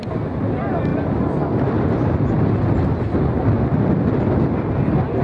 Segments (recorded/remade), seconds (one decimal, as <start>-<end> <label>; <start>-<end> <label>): 0.0-5.2 recorded